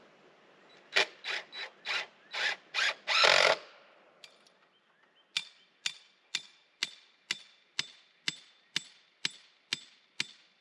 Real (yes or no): yes